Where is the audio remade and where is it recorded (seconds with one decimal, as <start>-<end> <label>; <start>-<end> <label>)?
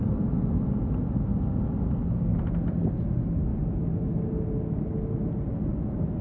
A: 0.0-6.2 recorded